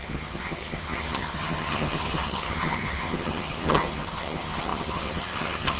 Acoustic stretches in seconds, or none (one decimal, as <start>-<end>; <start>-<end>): none